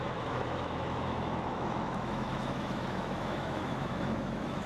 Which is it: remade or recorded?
remade